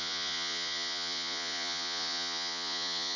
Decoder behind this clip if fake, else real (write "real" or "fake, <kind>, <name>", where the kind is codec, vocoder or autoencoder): fake, vocoder, Vocos